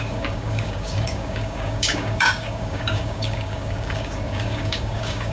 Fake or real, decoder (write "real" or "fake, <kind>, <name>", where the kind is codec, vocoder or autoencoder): fake, codec, DAC